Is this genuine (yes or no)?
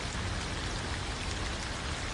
yes